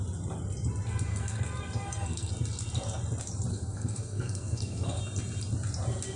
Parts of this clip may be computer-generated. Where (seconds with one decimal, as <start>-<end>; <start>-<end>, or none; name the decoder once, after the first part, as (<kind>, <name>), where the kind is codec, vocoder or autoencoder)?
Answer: 1.1-2.3 (codec, SNAC); 3.5-5.0